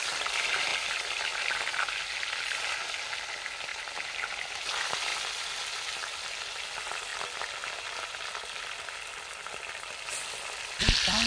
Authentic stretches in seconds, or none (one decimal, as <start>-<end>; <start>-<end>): 0.0-3.7; 4.6-11.3